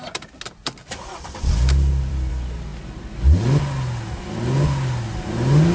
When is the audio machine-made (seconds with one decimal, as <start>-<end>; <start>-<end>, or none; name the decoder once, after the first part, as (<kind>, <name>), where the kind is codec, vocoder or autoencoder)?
0.8-2.3 (vocoder, BigVGAN v2)